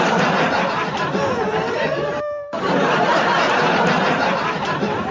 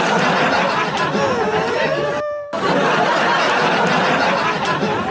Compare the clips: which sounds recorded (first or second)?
second